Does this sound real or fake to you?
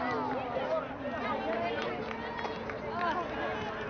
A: real